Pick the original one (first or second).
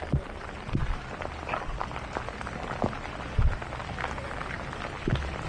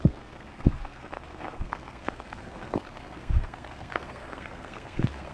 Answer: first